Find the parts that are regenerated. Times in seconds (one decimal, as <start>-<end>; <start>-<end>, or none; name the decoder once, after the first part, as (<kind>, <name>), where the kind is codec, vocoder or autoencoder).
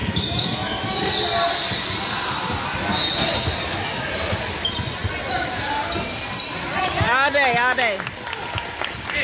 0.0-1.0 (autoencoder, DAC-VAE)